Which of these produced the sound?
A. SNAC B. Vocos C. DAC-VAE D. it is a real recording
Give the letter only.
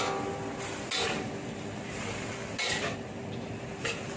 D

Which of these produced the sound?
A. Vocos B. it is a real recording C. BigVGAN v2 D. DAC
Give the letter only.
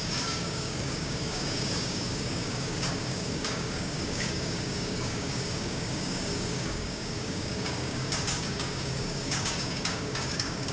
D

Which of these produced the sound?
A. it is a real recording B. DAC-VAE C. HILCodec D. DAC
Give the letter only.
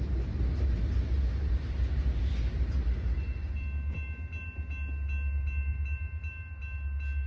A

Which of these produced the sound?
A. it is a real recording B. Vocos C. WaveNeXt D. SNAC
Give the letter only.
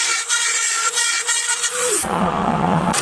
B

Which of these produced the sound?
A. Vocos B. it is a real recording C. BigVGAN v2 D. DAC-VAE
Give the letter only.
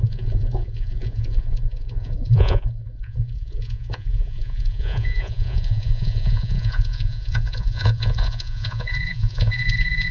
A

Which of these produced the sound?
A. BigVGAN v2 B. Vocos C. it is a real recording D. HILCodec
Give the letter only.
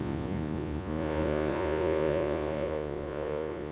B